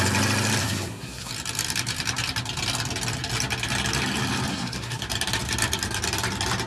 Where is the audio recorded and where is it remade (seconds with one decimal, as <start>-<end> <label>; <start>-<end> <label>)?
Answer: 0.0-0.6 recorded; 0.6-1.3 remade; 1.3-4.5 recorded; 4.5-5.0 remade; 5.0-6.7 recorded